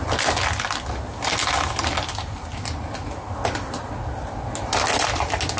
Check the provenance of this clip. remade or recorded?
recorded